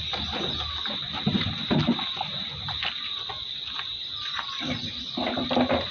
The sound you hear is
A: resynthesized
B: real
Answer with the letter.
B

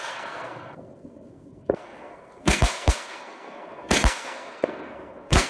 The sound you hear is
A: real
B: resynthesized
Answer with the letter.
B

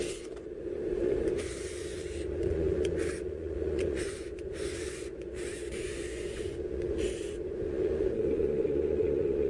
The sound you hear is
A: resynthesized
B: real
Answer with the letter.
A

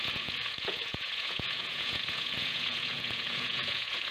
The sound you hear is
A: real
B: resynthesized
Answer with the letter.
B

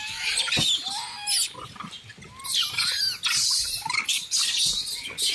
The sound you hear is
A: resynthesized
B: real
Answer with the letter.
B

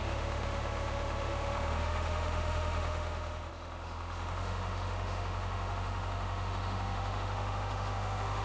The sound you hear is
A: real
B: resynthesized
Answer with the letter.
B